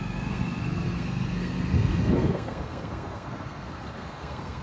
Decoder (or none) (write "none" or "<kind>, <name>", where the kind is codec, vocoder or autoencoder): codec, SNAC